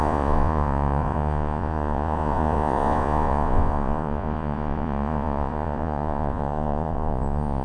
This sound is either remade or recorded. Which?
remade